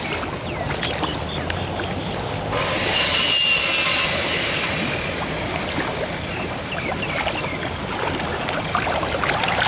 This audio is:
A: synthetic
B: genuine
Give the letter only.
B